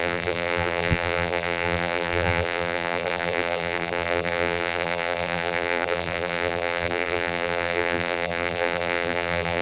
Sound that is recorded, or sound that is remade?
remade